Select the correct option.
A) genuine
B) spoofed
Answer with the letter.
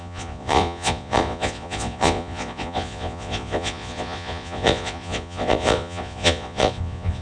B